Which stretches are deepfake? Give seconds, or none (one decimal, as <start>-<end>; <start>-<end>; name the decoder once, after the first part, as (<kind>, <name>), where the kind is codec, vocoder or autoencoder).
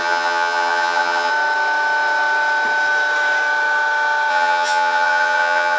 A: 0.0-1.3 (vocoder, HiFi-GAN); 4.3-5.8